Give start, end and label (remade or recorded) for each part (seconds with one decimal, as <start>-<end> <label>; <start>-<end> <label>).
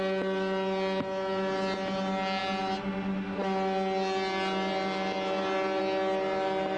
0.0-6.8 recorded